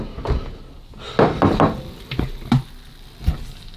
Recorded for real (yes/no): yes